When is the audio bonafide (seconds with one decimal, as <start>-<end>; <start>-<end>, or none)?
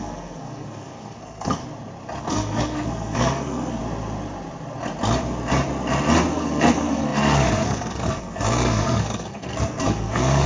1.6-2.2; 3.8-6.3